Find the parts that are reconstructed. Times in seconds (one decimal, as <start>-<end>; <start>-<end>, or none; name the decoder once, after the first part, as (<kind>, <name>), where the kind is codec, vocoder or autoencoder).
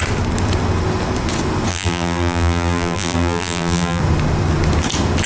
1.7-4.0 (vocoder, BigVGAN v2)